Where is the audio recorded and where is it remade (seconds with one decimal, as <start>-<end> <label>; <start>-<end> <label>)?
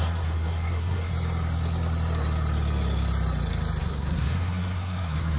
0.0-1.1 remade; 1.1-3.8 recorded; 3.8-5.4 remade